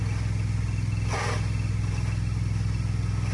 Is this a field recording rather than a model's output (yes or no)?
yes